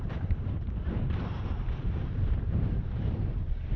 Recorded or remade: remade